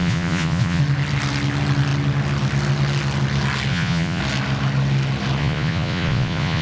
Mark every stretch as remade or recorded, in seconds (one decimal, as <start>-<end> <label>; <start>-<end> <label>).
0.0-0.8 remade; 0.8-3.7 recorded; 3.7-4.2 remade; 4.2-5.4 recorded; 5.4-6.6 remade